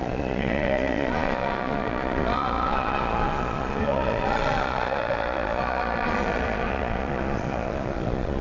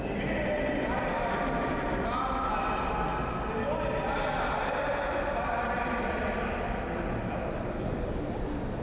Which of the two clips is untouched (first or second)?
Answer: second